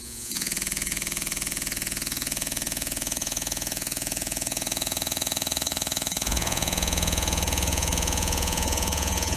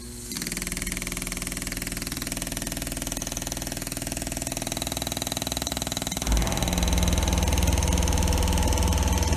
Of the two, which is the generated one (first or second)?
first